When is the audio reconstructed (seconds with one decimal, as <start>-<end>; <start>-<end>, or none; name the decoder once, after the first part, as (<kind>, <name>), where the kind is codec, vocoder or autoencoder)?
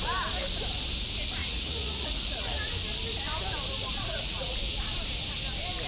1.4-2.7 (vocoder, Vocos); 4.1-4.8